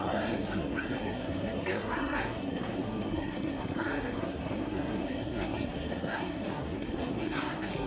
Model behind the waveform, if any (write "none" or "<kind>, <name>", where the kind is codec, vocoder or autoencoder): codec, SNAC